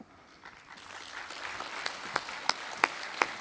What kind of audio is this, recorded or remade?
recorded